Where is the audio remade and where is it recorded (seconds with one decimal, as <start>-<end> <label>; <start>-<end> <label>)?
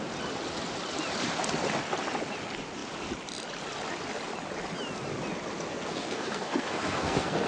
0.0-5.7 recorded; 5.7-7.5 remade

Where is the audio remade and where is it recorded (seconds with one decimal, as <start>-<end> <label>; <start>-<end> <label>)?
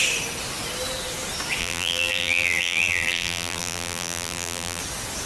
0.0-1.6 recorded; 1.6-4.8 remade; 4.8-5.3 recorded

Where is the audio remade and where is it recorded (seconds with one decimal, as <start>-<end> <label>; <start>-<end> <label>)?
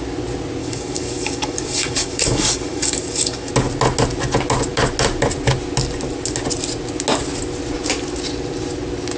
0.0-0.6 recorded; 0.6-3.5 remade; 3.5-9.2 recorded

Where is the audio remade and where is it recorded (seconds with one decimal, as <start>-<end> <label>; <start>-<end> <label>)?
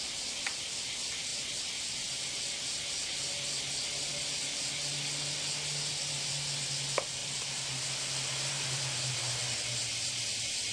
0.0-7.2 recorded; 7.2-9.4 remade; 9.4-10.7 recorded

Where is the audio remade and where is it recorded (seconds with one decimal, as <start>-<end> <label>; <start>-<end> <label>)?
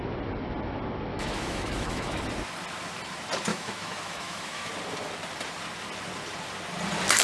0.0-1.1 recorded; 1.1-2.2 remade; 2.2-3.5 recorded; 3.5-4.7 remade; 4.7-7.2 recorded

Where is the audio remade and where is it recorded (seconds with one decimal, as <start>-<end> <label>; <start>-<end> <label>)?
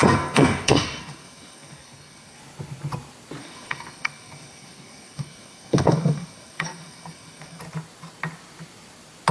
0.0-2.4 remade; 2.4-3.4 recorded; 3.4-7.6 remade; 7.6-9.3 recorded